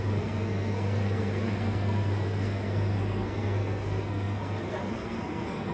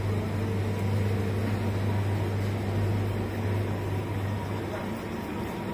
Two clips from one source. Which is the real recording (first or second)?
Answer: second